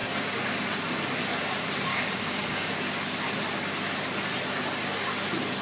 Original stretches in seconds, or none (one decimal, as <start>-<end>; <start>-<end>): 0.0-1.9; 2.7-5.6